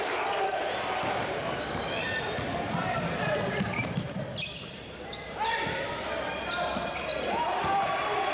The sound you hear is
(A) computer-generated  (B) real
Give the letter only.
A